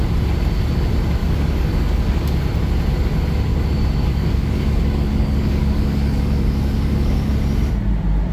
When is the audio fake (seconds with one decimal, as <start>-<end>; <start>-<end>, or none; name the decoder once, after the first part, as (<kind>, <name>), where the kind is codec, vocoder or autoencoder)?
1.2-2.4 (codec, DAC); 4.1-7.3